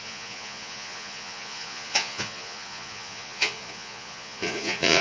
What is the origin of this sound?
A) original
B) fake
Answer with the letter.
B